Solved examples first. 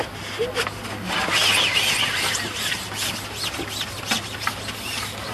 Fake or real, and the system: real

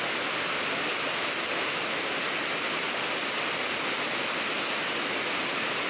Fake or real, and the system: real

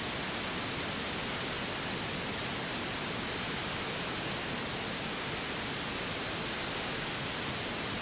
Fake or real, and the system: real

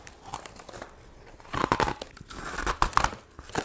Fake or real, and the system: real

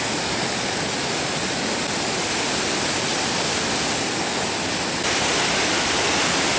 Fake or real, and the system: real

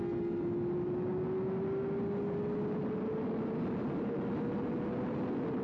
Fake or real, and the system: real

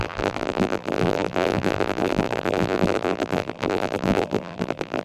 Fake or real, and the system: fake, vocoder, BigVGAN v2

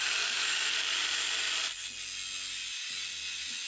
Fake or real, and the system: real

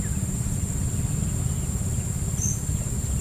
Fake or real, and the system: real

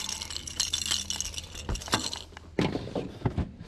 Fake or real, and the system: real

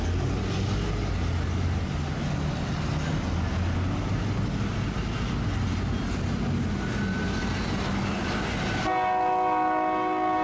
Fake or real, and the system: real